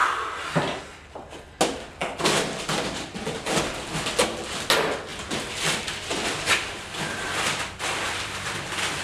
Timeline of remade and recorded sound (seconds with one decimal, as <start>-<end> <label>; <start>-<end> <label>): 0.0-1.5 remade; 1.5-2.0 recorded; 2.0-3.7 remade; 3.7-5.1 recorded; 5.1-9.0 remade